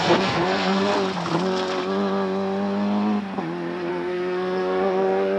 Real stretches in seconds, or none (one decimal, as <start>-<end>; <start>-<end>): 0.9-3.9